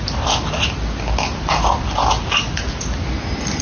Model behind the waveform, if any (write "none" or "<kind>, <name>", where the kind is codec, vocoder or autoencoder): none